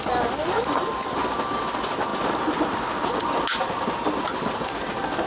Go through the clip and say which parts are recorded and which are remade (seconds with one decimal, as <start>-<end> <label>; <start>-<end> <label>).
0.0-5.3 recorded